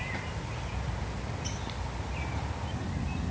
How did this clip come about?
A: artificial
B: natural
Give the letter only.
B